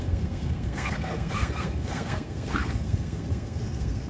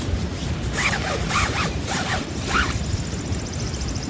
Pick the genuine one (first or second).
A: second